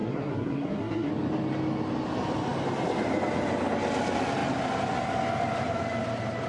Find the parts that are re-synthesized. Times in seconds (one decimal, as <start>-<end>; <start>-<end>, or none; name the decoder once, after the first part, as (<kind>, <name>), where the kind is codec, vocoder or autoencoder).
0.0-1.1 (codec, SNAC)